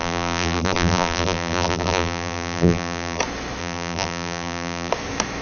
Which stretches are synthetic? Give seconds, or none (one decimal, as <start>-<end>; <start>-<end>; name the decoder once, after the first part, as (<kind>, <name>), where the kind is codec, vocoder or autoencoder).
0.0-3.2 (vocoder, BigVGAN v2); 3.6-4.9